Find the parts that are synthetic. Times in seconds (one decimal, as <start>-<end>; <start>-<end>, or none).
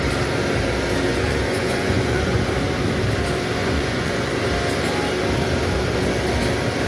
1.1-2.5; 3.6-4.3